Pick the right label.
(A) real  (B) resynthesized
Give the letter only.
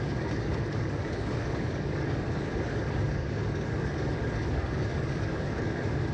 B